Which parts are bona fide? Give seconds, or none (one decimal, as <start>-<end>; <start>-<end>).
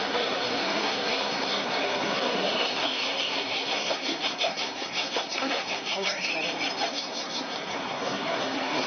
6.3-6.9